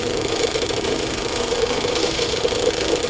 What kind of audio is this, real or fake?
fake